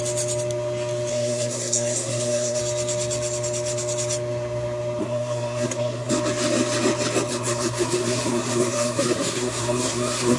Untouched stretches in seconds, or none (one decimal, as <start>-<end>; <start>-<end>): 0.0-1.1; 2.6-5.0; 6.1-7.3